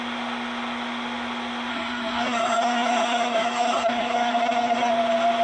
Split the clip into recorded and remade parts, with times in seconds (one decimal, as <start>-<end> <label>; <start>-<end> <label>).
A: 0.0-1.7 recorded; 1.7-4.9 remade; 4.9-5.4 recorded